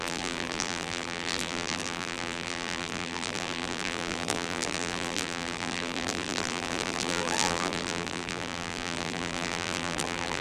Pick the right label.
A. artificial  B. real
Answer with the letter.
A